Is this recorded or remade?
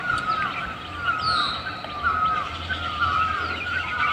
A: recorded